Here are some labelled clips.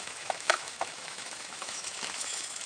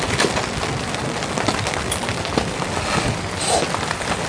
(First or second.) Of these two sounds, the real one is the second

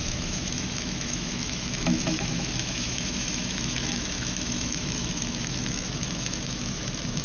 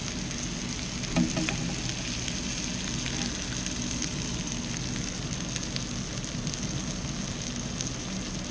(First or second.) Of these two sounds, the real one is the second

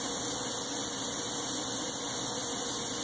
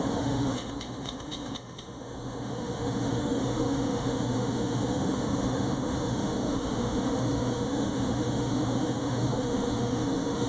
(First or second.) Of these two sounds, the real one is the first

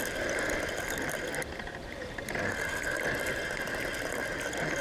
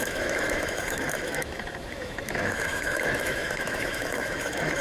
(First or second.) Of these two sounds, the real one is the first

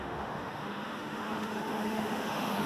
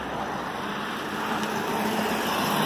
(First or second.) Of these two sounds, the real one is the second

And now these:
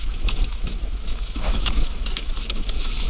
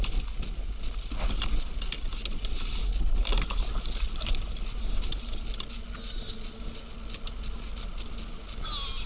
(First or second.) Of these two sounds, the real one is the second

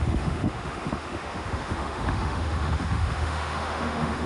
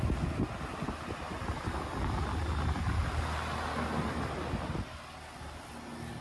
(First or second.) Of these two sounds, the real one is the second